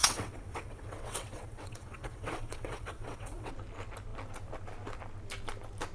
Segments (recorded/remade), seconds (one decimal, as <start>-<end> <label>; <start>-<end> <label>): 0.0-3.5 remade; 3.5-5.9 recorded